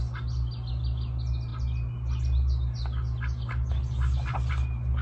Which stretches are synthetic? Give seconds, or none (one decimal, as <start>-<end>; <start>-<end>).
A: none